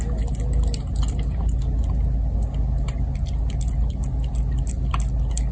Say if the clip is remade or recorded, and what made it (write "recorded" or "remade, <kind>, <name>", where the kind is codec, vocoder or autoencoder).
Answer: recorded